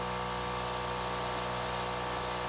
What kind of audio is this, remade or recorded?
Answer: recorded